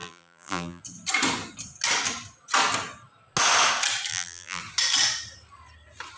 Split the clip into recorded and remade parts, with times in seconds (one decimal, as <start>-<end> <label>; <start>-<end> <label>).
0.0-0.8 remade; 0.8-4.1 recorded; 4.1-4.6 remade; 4.6-6.2 recorded